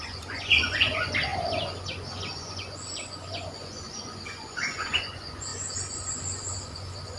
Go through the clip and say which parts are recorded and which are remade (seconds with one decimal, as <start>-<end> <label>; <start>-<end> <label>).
0.0-7.2 remade